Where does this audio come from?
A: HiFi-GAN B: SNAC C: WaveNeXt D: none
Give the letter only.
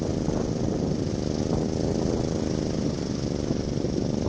D